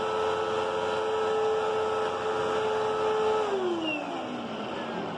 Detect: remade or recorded recorded